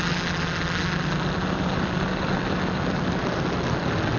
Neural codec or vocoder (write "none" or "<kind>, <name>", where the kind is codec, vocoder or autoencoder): none